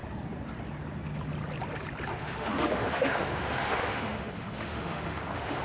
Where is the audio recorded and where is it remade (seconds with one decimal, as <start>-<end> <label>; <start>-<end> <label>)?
0.0-2.1 recorded; 2.1-5.6 remade